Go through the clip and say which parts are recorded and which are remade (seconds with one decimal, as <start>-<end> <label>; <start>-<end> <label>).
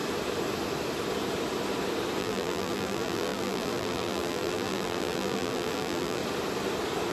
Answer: 0.0-2.2 recorded; 2.2-6.2 remade; 6.2-7.1 recorded